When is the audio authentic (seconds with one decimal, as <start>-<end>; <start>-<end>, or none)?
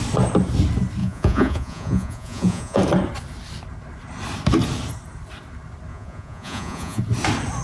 0.0-1.0; 2.8-5.9; 7.0-7.6